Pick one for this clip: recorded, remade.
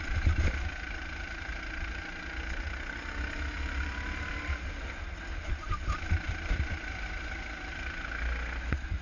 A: recorded